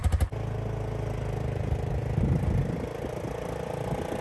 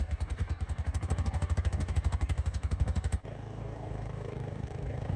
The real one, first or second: first